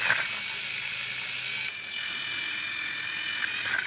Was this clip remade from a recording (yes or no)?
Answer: no